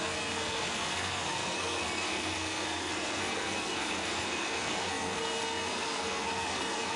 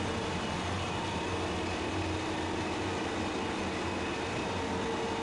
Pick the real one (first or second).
second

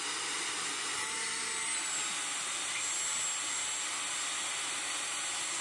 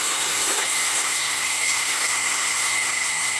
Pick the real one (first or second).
first